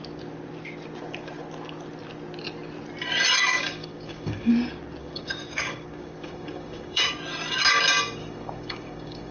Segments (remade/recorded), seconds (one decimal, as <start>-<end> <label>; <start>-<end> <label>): 0.0-3.5 recorded; 3.5-4.5 remade; 4.5-5.0 recorded; 5.0-7.1 remade; 7.1-8.2 recorded; 8.2-9.3 remade